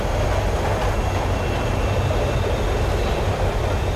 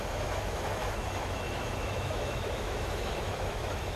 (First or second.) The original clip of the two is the first